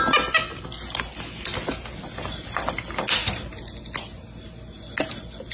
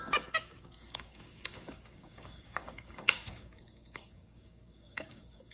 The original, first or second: first